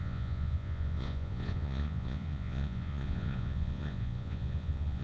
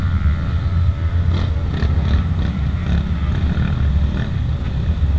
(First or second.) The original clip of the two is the second